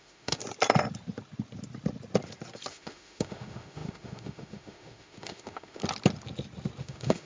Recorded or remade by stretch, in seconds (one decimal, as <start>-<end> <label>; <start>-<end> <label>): 0.0-0.4 remade; 0.4-2.7 recorded; 2.7-5.8 remade; 5.8-6.8 recorded; 6.8-7.2 remade